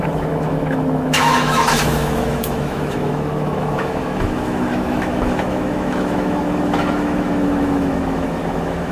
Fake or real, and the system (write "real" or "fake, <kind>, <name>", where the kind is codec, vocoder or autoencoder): fake, autoencoder, DAC-VAE